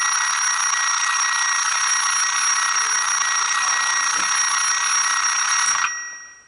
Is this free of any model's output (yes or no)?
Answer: yes